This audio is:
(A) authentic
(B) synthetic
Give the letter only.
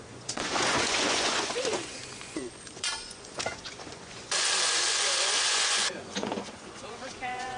B